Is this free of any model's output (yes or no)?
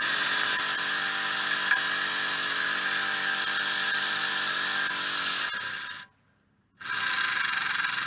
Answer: yes